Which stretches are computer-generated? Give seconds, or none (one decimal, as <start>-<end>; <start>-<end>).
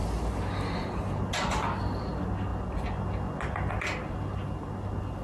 none